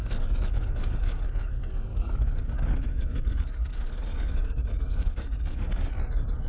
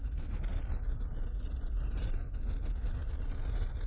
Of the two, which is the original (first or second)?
second